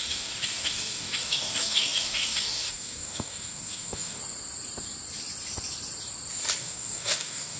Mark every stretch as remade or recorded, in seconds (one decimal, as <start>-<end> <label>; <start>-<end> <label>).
0.0-4.2 remade; 4.2-6.6 recorded; 6.6-7.6 remade